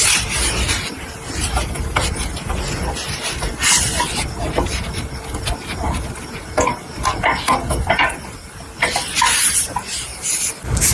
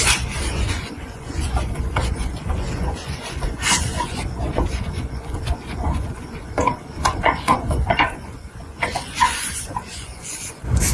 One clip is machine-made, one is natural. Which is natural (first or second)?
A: first